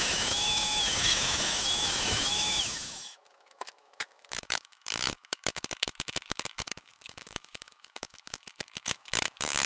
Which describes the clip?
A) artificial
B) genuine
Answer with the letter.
A